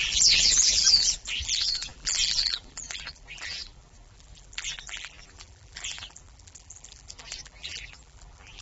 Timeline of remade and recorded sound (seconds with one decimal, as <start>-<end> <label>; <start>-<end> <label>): 0.0-8.6 remade